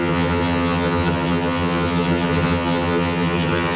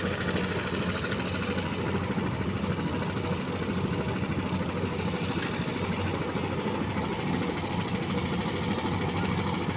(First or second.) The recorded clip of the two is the second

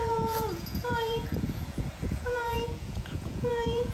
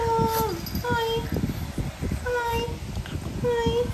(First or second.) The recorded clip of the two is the second